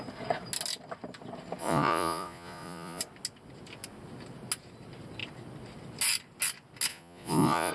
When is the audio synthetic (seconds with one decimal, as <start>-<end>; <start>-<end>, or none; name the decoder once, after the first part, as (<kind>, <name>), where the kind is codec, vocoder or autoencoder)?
1.6-3.0 (vocoder, Vocos); 6.9-7.7